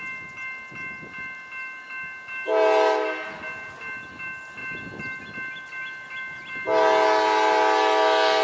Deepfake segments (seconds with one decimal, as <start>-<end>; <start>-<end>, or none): none

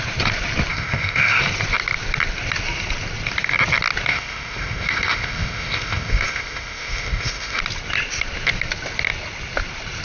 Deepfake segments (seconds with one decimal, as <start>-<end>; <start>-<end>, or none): 0.7-1.4; 4.1-7.6